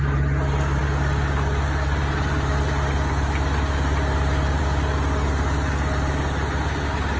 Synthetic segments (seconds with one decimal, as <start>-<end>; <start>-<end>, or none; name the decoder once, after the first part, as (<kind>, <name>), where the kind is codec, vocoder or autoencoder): none